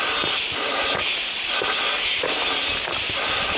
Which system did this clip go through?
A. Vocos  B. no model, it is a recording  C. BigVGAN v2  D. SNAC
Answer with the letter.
B